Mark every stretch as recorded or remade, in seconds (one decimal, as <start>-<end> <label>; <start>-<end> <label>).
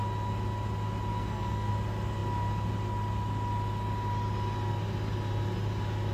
0.0-1.1 recorded; 1.1-1.7 remade; 1.7-6.1 recorded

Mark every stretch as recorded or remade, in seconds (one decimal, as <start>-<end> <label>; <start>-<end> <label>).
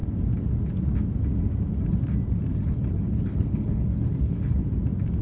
0.0-2.5 recorded; 2.5-4.6 remade; 4.6-5.2 recorded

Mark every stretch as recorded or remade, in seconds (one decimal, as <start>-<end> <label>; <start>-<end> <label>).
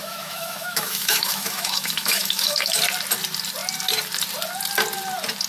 0.0-2.8 remade; 2.8-5.5 recorded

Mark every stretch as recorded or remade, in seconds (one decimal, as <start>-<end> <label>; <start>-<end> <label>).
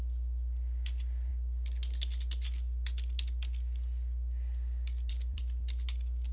0.0-1.3 remade; 1.3-5.1 recorded; 5.1-6.3 remade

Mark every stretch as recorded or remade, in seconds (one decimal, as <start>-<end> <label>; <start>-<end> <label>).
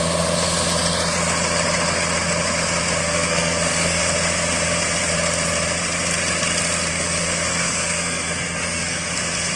0.0-3.0 recorded; 3.0-4.0 remade; 4.0-6.9 recorded; 6.9-9.1 remade; 9.1-9.6 recorded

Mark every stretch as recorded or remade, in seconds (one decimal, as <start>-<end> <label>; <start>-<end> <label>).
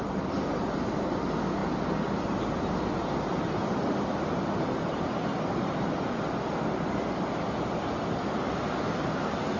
0.0-9.6 recorded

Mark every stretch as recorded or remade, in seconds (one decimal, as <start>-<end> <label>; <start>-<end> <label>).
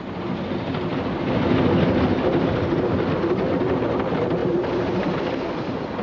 0.0-6.0 recorded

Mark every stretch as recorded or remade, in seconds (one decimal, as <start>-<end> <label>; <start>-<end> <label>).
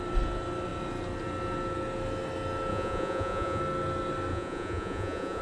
0.0-2.7 recorded; 2.7-3.6 remade; 3.6-4.3 recorded; 4.3-5.4 remade